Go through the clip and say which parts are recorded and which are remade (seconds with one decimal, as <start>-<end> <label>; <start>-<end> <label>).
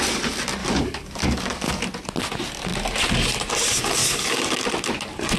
0.0-0.6 recorded; 0.6-1.8 remade; 1.8-4.0 recorded; 4.0-4.6 remade; 4.6-5.4 recorded